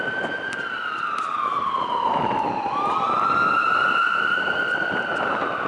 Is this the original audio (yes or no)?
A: yes